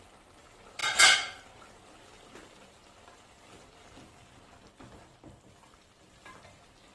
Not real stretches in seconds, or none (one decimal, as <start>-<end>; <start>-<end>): none

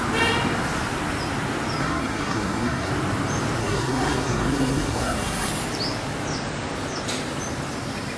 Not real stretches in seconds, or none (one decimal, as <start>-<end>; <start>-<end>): 1.8-2.9; 3.6-5.5

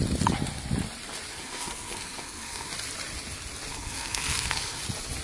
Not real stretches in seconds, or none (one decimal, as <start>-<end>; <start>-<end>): 1.3-2.7; 3.7-4.8